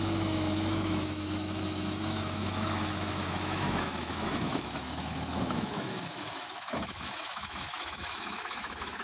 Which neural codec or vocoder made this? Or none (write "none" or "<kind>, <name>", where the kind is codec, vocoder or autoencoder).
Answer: autoencoder, DAC-VAE